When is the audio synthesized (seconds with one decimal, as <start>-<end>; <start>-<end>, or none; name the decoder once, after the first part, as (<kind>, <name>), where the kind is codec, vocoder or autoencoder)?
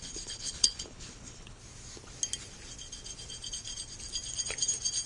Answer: 0.0-1.6 (codec, HILCodec)